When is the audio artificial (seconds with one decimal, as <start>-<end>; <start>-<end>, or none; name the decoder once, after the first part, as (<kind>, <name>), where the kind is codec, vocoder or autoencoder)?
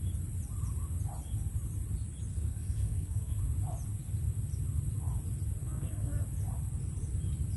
2.3-3.4 (codec, SNAC); 5.6-6.1